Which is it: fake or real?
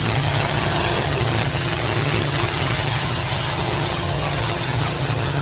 fake